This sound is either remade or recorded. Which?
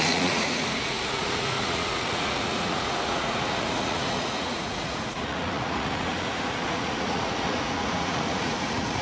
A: remade